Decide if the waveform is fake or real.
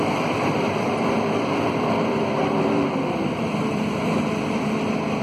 fake